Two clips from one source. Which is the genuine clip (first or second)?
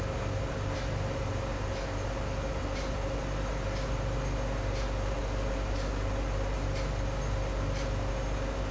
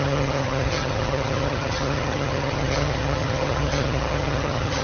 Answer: first